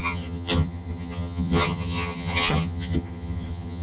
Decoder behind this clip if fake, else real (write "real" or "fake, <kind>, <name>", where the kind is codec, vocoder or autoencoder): fake, vocoder, HiFi-GAN